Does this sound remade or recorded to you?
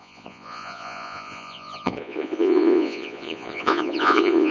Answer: remade